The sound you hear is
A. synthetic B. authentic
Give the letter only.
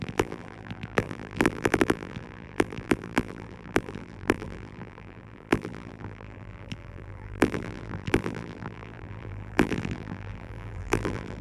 A